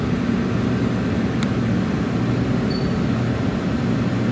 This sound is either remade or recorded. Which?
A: recorded